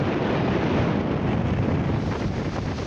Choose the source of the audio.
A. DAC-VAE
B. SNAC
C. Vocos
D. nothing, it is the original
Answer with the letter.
D